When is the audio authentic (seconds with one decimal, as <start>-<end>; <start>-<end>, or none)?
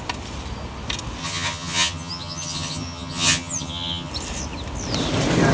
0.0-1.2; 4.1-5.5